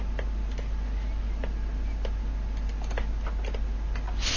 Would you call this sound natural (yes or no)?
yes